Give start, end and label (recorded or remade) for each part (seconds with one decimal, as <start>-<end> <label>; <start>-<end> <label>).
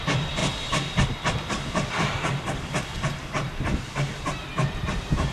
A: 0.0-0.4 remade; 0.4-0.9 recorded; 0.9-5.3 remade